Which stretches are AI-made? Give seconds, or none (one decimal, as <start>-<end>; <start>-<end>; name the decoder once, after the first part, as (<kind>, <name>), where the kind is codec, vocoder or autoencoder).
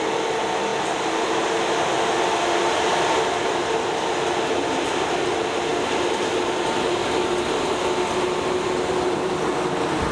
none